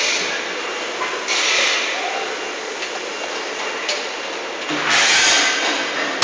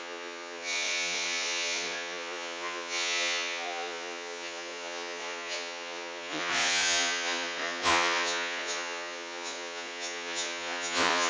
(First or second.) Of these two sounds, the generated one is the second